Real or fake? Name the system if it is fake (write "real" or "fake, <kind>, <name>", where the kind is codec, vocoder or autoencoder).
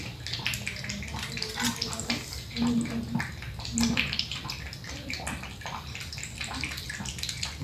real